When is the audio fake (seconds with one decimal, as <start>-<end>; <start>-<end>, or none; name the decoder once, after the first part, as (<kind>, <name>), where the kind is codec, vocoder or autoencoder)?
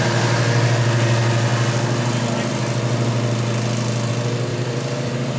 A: 4.5-5.4 (vocoder, BigVGAN v2)